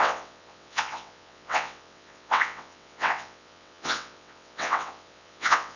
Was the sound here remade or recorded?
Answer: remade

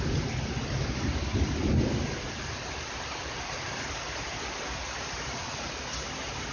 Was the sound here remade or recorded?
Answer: recorded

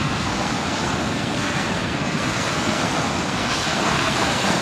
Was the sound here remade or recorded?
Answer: remade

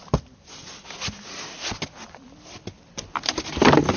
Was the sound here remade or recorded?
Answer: recorded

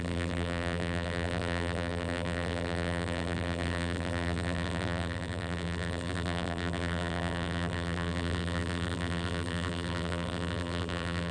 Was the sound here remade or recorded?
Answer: remade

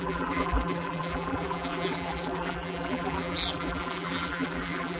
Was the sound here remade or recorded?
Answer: remade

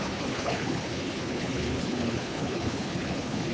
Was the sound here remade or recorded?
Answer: remade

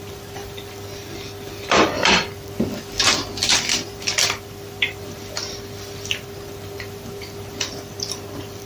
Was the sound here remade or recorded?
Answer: remade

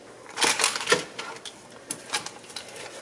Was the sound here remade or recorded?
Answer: recorded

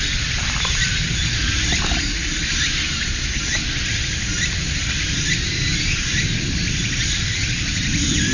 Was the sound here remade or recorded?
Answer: recorded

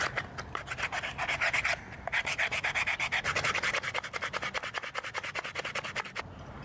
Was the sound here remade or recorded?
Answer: recorded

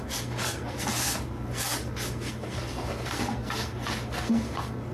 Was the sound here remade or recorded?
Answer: remade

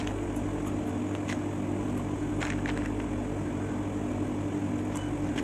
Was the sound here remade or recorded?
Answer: recorded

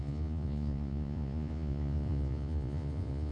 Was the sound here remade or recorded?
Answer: remade